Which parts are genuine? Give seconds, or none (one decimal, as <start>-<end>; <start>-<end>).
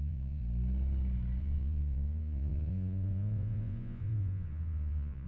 0.4-1.4